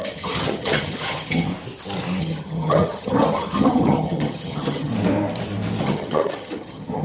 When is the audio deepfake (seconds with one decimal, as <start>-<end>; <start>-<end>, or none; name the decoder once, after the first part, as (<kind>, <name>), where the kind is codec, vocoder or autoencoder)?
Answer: 0.0-1.5 (vocoder, HiFi-GAN); 2.2-4.9; 5.8-7.0